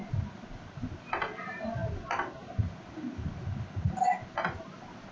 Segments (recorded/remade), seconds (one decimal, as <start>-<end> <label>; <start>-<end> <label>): 0.0-5.1 recorded

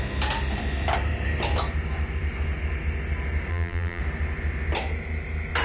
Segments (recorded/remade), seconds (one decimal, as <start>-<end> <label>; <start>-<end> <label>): 0.0-3.5 recorded; 3.5-4.0 remade; 4.0-5.6 recorded